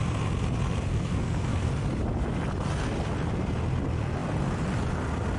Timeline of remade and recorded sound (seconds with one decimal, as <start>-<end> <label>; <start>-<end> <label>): 0.0-0.9 recorded; 0.9-1.7 remade; 1.7-5.4 recorded